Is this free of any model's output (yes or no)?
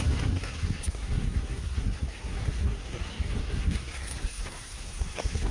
no